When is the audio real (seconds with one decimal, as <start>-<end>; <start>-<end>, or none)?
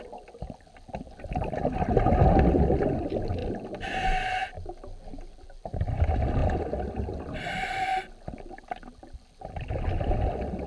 0.0-10.7